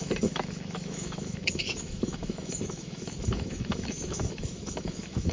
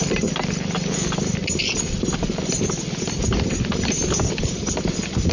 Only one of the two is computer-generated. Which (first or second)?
first